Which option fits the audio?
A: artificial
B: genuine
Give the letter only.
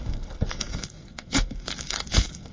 A